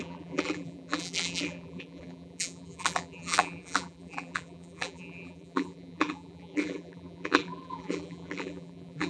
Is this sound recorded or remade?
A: remade